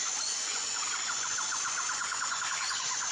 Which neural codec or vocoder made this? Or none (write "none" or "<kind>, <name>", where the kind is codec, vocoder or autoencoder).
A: vocoder, Vocos